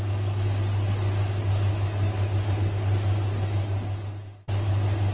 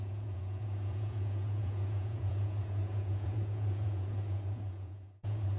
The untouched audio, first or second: first